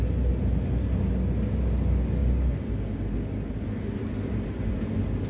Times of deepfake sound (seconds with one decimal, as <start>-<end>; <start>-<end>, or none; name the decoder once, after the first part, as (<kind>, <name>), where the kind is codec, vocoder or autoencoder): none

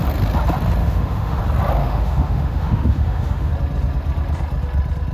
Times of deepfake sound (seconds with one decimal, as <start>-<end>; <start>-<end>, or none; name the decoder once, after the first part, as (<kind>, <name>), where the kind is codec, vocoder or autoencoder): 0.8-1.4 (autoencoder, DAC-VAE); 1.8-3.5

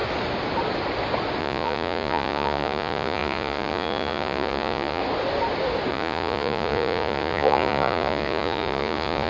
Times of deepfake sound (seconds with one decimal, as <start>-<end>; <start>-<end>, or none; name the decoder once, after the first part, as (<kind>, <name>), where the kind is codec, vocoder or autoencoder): 1.4-5.0 (vocoder, Vocos); 5.9-9.3

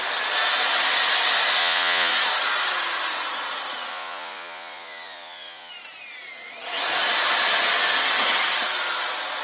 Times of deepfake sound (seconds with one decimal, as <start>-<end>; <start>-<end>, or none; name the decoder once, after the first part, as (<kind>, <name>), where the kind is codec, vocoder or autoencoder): 1.6-2.1 (vocoder, Vocos); 3.9-5.7

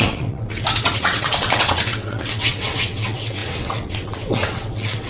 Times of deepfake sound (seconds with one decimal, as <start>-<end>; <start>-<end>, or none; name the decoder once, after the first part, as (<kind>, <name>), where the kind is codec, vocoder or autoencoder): 0.0-5.1 (vocoder, WaveNeXt)

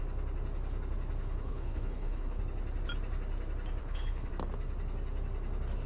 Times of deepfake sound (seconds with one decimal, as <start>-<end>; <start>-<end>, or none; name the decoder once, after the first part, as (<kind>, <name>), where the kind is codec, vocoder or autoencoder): 1.2-2.4 (codec, HILCodec); 3.8-4.3

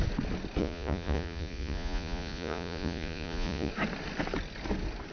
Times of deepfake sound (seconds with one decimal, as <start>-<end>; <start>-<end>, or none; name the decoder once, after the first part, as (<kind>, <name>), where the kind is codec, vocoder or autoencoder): 0.6-3.7 (vocoder, Vocos)